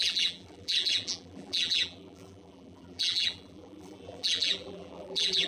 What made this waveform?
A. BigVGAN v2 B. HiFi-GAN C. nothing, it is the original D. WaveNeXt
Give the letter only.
A